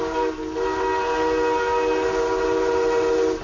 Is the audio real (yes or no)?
yes